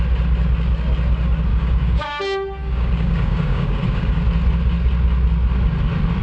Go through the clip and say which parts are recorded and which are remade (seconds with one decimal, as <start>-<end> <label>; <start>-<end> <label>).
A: 0.0-1.5 recorded; 1.5-2.2 remade; 2.2-2.6 recorded; 2.6-4.2 remade; 4.2-6.2 recorded